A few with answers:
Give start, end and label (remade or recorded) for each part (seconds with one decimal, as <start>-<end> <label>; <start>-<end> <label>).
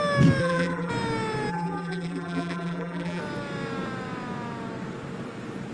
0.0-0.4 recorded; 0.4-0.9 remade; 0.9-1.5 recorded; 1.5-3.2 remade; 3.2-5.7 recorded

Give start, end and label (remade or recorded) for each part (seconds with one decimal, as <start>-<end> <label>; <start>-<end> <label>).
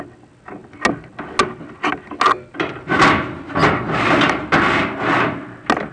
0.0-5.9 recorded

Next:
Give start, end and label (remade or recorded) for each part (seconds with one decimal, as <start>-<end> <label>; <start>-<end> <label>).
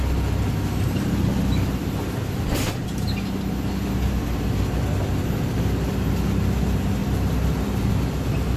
0.0-7.0 recorded; 7.0-7.9 remade; 7.9-8.6 recorded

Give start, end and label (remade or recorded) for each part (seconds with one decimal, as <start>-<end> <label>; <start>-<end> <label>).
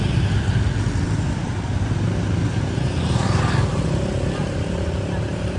0.0-5.6 remade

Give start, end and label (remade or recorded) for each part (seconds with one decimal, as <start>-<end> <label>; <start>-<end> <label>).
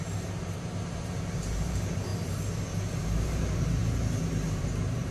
0.0-2.1 remade; 2.1-3.0 recorded; 3.0-5.1 remade